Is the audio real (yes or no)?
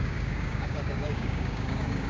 no